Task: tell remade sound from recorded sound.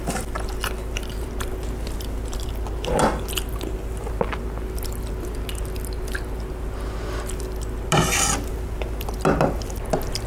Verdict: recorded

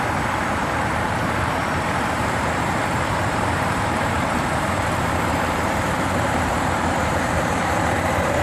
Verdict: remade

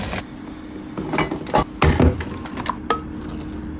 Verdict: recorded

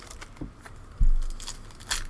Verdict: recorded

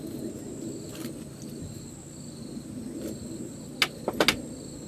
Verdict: recorded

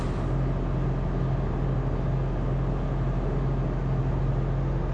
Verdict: recorded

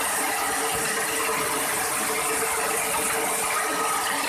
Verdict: recorded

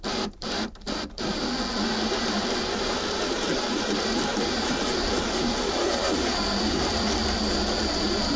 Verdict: remade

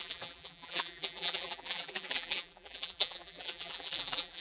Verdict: remade